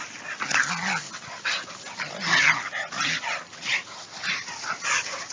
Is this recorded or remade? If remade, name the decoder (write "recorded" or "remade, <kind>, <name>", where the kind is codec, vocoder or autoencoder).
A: recorded